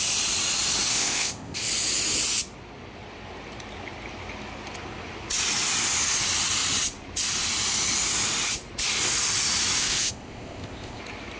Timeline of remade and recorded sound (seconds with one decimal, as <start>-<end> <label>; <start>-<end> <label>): 0.0-0.9 recorded; 0.9-1.7 remade; 1.7-9.8 recorded; 9.8-11.0 remade; 11.0-11.4 recorded